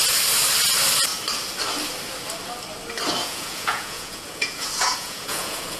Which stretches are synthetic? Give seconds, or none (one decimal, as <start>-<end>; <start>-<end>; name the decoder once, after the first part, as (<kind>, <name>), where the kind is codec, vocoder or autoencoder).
3.2-5.8 (vocoder, Vocos)